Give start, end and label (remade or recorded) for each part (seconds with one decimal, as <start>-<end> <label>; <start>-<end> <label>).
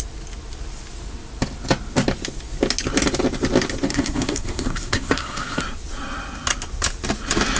0.0-3.9 recorded; 3.9-5.6 remade; 5.6-7.6 recorded